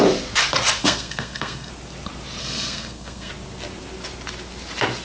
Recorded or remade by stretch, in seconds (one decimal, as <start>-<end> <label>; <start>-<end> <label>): 0.0-0.8 recorded; 0.8-1.7 remade; 1.7-2.4 recorded; 2.4-3.3 remade; 3.3-5.0 recorded